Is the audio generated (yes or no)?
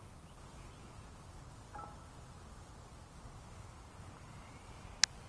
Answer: no